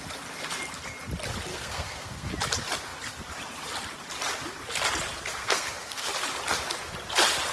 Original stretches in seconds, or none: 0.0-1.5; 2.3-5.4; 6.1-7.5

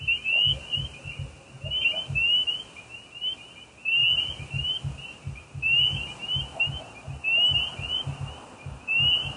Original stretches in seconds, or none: 0.0-9.4